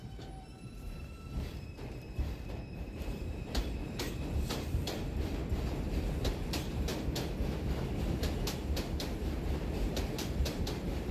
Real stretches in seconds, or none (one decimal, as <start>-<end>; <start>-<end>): 6.9-8.0